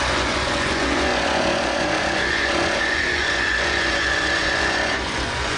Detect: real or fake fake